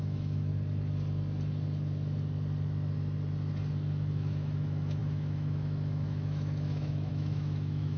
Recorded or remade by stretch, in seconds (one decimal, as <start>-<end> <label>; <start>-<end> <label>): 0.0-0.5 remade; 0.5-4.1 recorded; 4.1-8.0 remade